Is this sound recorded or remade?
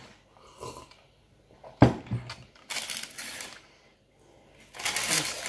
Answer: recorded